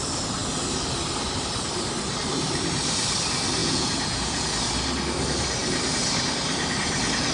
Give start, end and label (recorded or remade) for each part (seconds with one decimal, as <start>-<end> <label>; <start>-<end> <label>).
0.0-3.6 recorded; 3.6-4.5 remade; 4.5-7.3 recorded